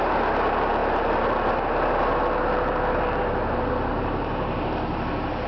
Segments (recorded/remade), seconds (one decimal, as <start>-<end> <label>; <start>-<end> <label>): 0.0-3.9 recorded; 3.9-4.6 remade; 4.6-5.5 recorded